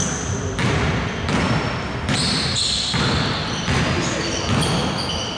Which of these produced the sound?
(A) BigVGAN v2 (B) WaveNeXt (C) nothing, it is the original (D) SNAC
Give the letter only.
C